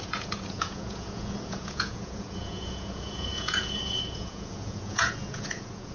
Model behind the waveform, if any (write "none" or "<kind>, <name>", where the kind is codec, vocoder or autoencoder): vocoder, Vocos